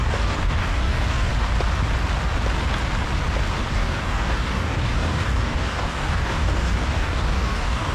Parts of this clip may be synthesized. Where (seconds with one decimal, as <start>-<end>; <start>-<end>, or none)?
0.0-1.3; 3.7-7.9